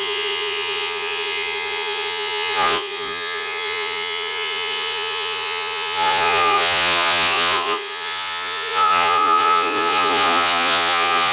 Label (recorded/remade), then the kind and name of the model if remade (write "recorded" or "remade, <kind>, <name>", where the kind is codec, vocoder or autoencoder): remade, vocoder, Vocos